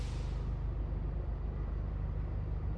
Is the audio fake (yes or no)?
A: no